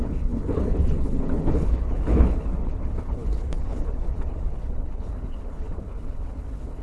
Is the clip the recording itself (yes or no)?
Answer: no